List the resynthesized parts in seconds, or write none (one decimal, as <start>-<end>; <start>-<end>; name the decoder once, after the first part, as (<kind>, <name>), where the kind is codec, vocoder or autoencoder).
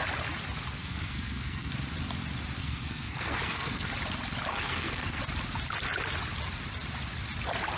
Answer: 0.8-1.7 (codec, SNAC); 2.6-3.9; 4.5-5.2